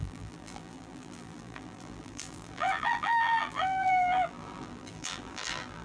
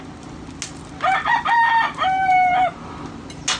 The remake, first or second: first